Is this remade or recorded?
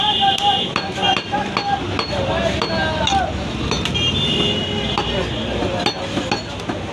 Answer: recorded